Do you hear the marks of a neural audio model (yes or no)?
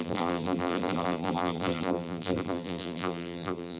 yes